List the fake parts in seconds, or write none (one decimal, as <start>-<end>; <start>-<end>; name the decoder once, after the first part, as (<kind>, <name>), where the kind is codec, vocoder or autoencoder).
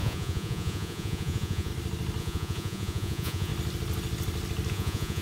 0.0-1.7 (vocoder, Vocos); 2.2-3.5; 4.7-5.2